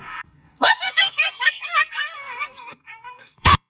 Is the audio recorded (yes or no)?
no